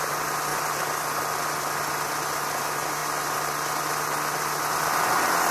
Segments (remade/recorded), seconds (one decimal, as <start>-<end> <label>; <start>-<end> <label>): 0.0-5.5 recorded